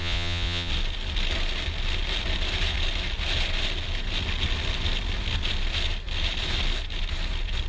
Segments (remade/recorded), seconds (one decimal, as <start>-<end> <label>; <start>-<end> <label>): 0.0-0.7 remade; 0.7-7.7 recorded